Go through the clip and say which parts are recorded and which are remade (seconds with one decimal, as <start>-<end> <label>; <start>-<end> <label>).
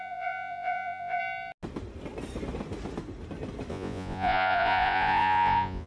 0.0-1.2 remade; 1.2-3.7 recorded; 3.7-5.9 remade